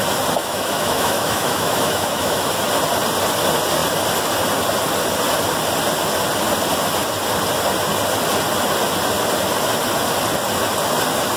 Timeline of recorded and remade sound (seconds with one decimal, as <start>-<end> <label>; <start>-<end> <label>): 0.0-0.4 recorded; 0.4-2.5 remade; 2.5-11.4 recorded